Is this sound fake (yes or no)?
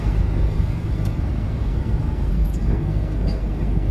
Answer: yes